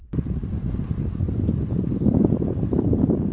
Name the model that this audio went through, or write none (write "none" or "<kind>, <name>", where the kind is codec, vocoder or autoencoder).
none